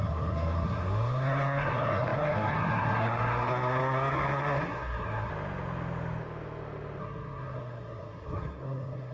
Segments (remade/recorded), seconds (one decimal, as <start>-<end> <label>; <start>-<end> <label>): 0.0-5.3 remade; 5.3-7.0 recorded; 7.0-9.1 remade